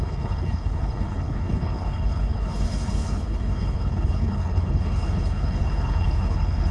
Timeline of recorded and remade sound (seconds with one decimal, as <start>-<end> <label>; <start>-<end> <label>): 0.0-6.7 remade